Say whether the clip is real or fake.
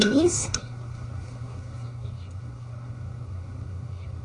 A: fake